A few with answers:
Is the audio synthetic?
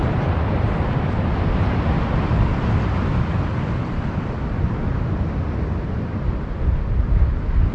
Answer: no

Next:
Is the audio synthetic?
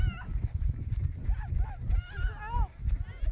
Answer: no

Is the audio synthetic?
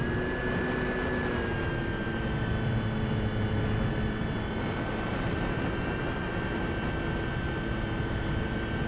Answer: no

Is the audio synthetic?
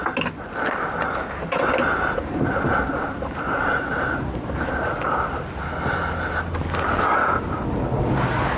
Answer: no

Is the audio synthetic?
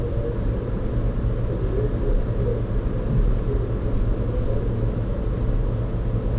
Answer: no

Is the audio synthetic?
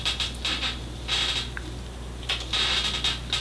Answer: no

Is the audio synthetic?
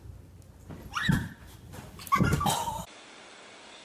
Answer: no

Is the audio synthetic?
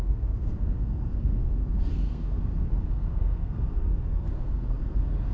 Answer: yes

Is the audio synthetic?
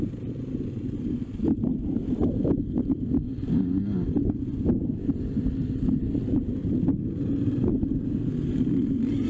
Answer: no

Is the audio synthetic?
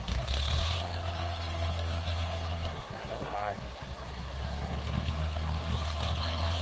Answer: yes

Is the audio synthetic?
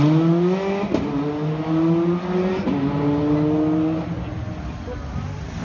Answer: no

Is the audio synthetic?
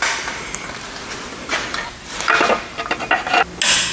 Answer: no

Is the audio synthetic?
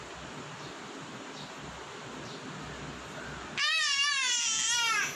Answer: no